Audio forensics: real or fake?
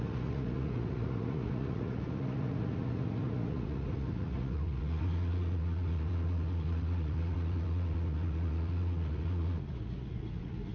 fake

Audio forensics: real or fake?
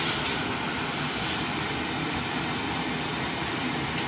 fake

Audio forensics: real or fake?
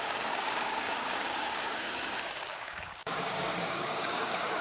fake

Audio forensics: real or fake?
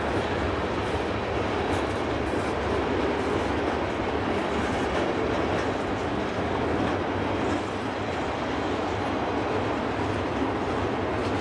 real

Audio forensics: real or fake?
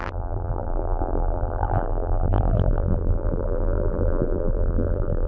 fake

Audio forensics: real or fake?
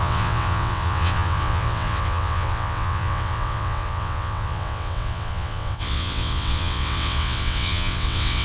fake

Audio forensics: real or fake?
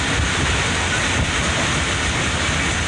real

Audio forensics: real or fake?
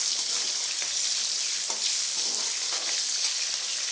real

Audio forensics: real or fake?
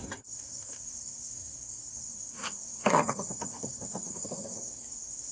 fake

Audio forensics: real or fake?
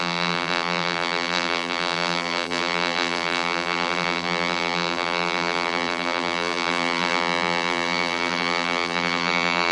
fake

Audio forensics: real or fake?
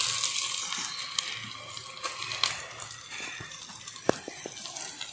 real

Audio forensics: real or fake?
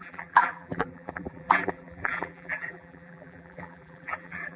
fake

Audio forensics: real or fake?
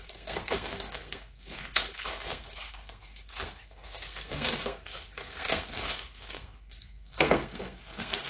fake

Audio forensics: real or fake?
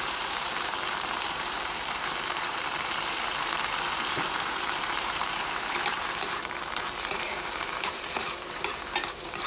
fake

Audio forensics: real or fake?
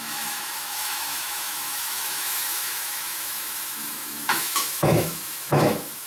fake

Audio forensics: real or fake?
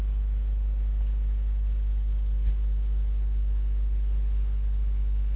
fake